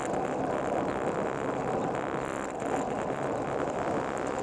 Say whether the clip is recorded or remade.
recorded